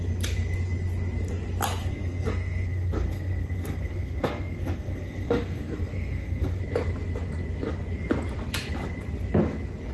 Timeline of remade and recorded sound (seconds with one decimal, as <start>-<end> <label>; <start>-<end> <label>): 0.0-1.8 recorded; 1.8-6.6 remade; 6.6-9.9 recorded